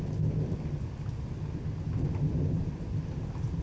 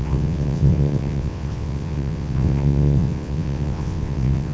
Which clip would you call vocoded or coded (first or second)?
second